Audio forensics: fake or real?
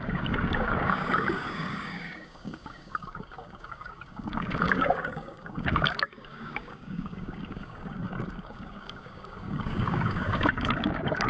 fake